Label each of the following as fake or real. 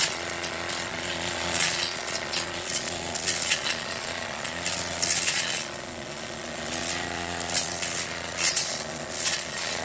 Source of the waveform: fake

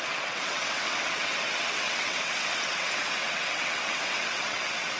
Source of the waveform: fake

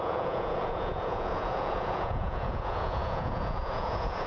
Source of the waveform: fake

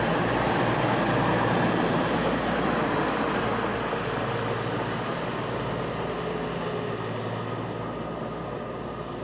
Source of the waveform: real